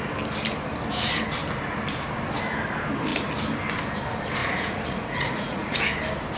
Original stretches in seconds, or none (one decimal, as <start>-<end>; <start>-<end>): 0.0-4.4; 5.8-6.4